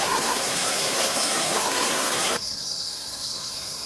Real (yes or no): no